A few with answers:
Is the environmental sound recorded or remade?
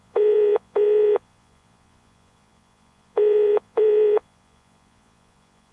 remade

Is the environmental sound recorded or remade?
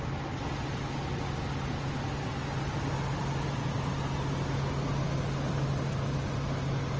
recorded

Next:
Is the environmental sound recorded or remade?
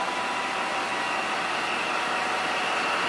recorded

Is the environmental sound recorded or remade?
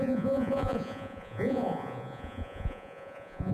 remade